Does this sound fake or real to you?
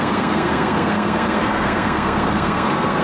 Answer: fake